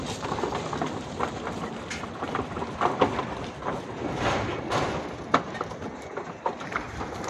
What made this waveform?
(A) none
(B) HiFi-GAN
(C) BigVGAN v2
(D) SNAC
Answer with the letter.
A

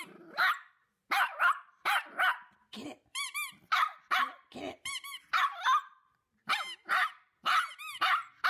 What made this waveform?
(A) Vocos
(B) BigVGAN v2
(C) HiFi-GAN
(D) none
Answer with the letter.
B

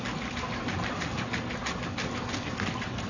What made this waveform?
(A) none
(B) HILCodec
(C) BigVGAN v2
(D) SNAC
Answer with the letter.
A